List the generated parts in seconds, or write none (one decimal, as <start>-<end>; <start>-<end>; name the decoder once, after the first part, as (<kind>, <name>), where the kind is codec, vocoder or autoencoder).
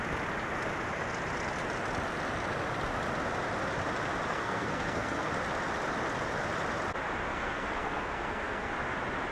4.3-5.3 (codec, SNAC); 7.3-8.7